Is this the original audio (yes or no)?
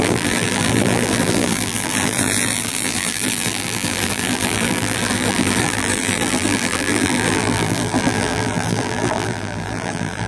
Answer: no